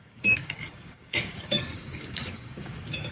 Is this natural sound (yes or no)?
no